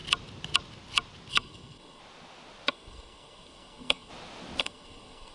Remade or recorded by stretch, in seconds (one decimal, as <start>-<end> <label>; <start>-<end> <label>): 0.0-1.3 recorded; 1.3-2.0 remade; 2.0-2.7 recorded; 2.7-4.1 remade; 4.1-4.6 recorded; 4.6-5.3 remade